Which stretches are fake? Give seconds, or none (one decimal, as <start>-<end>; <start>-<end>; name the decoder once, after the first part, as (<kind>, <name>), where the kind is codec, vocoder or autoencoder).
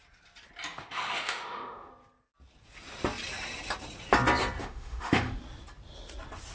0.8-1.9 (autoencoder, DAC-VAE); 4.6-5.4